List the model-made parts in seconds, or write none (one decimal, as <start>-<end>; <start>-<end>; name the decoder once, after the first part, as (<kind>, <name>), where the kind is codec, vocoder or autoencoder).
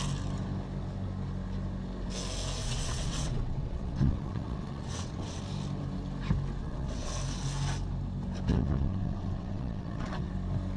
2.6-5.4 (vocoder, WaveNeXt); 6.6-7.1; 8.5-10.3